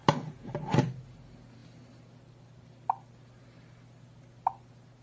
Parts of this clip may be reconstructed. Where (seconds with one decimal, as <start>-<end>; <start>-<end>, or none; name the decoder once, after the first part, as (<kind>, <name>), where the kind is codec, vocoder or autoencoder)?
none